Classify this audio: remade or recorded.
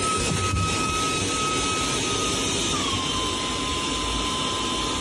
recorded